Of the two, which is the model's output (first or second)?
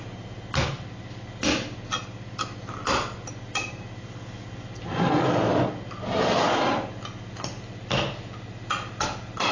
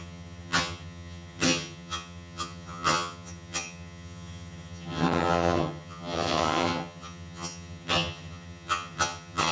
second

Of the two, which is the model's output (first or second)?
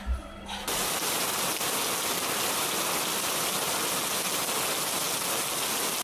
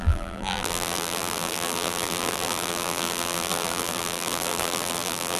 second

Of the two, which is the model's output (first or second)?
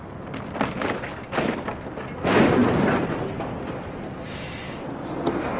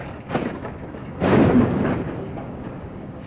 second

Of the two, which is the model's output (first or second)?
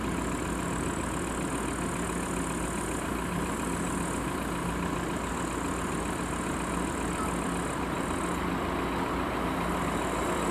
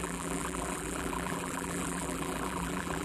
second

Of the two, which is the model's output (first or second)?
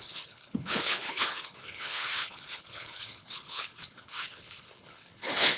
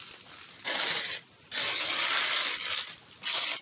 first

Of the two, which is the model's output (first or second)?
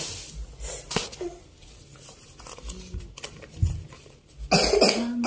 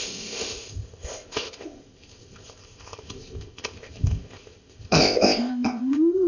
second